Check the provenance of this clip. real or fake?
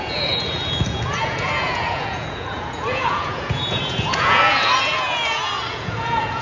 fake